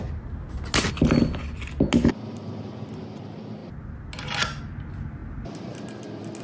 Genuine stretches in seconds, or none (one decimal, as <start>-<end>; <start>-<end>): 0.0-6.4